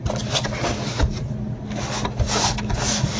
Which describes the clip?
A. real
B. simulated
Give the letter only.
A